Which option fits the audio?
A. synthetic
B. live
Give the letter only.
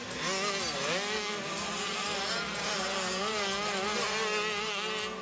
B